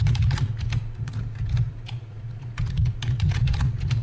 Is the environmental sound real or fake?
fake